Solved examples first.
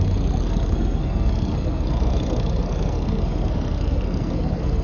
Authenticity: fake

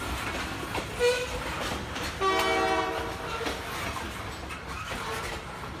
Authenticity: real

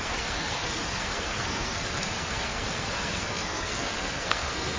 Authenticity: fake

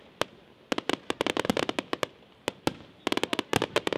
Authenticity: real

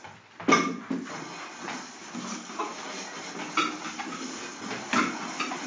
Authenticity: real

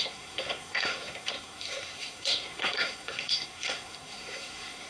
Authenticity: fake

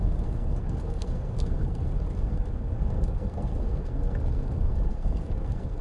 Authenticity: fake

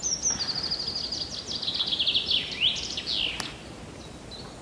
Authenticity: real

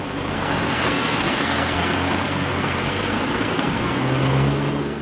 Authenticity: fake